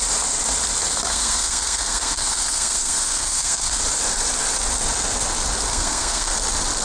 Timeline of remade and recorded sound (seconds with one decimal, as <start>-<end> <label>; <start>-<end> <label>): 0.0-1.1 recorded; 1.1-3.8 remade; 3.8-5.7 recorded; 5.7-6.3 remade; 6.3-6.8 recorded